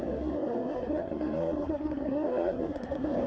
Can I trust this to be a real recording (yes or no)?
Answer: no